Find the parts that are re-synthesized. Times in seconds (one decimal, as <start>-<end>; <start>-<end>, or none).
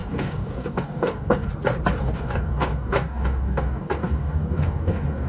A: 0.0-1.5; 2.0-5.3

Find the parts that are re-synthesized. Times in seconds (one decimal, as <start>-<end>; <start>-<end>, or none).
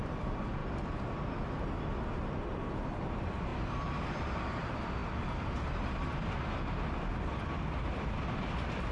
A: 0.0-0.6; 3.1-3.5; 4.1-8.9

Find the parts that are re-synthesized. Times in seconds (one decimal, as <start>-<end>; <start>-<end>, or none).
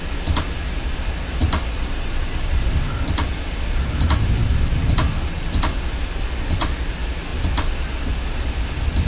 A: 0.0-4.4; 5.5-7.3; 8.0-9.1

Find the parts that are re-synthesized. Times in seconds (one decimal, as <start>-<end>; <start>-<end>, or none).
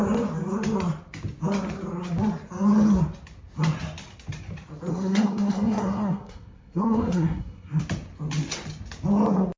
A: 4.9-7.8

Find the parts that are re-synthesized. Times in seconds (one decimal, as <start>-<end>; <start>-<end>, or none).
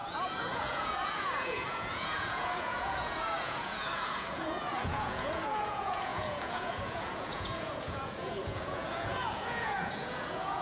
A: 0.0-10.6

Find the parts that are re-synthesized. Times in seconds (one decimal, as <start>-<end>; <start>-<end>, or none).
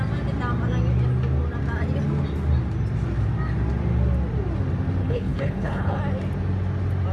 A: 5.0-6.0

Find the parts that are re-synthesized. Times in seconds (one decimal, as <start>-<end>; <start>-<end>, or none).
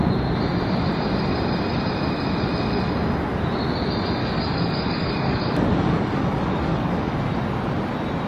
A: 4.2-7.2